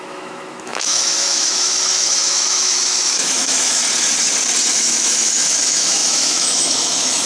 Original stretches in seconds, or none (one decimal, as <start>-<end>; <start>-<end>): 3.8-4.7